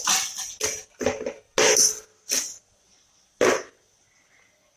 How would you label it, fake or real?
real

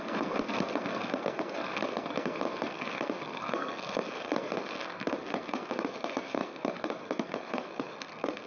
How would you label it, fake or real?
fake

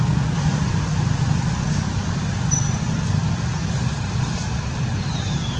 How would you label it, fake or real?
real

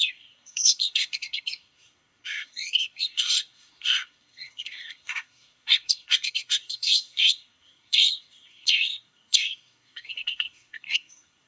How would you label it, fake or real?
fake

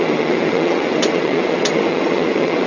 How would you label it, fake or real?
fake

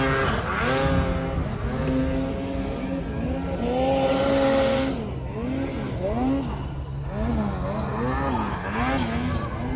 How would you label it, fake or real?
real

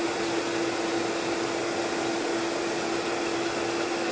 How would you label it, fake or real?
real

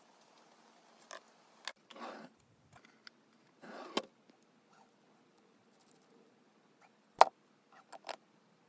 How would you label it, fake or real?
real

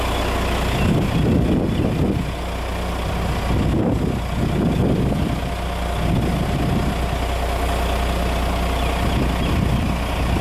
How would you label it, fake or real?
real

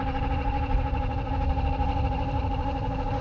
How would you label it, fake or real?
fake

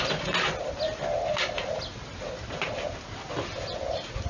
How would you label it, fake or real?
real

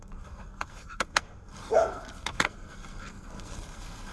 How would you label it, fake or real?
fake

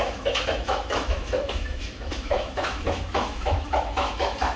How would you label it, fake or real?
fake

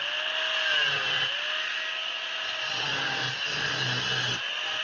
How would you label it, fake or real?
real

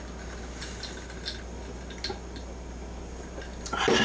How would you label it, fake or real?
real